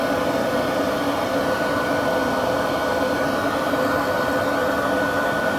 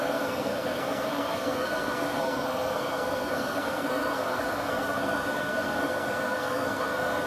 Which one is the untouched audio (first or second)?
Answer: first